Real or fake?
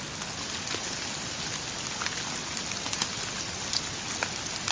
real